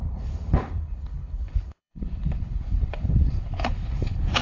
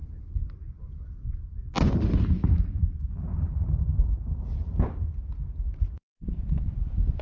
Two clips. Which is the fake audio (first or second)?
first